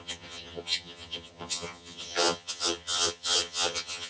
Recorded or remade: remade